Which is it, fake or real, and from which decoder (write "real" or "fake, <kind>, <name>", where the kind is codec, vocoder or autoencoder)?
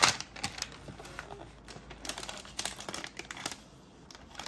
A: real